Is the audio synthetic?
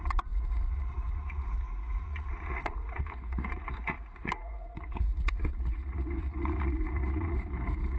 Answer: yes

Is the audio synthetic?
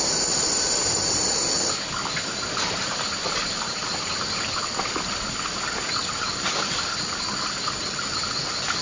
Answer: no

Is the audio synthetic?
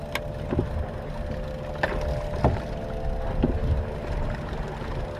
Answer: no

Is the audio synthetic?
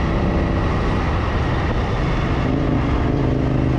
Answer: no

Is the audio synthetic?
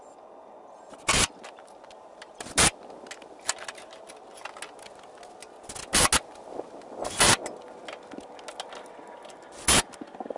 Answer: no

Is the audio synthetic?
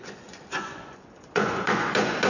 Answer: yes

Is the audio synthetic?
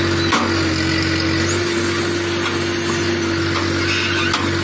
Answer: no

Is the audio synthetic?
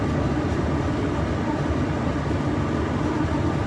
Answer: no